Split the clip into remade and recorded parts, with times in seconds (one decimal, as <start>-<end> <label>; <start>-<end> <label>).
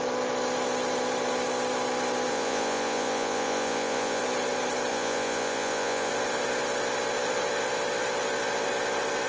0.0-2.3 recorded; 2.3-4.2 remade; 4.2-4.9 recorded; 4.9-6.1 remade; 6.1-9.3 recorded